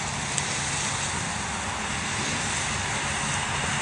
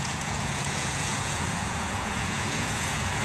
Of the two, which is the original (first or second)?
first